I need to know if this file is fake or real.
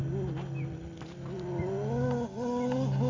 real